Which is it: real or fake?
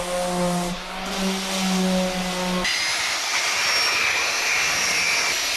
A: real